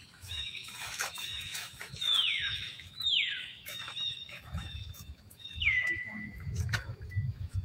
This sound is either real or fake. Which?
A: fake